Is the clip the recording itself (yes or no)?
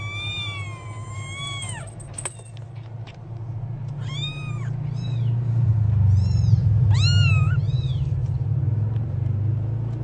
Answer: yes